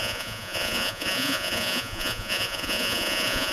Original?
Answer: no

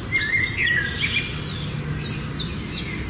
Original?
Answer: yes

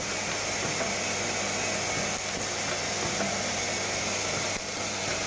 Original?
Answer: yes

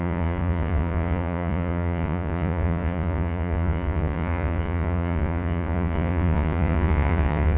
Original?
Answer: no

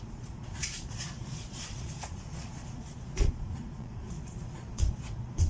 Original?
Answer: no